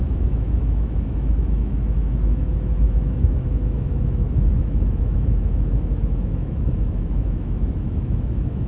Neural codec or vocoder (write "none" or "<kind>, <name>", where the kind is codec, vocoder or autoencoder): autoencoder, DAC-VAE